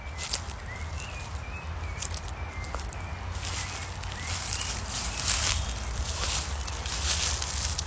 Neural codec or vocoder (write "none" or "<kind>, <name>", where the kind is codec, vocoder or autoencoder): none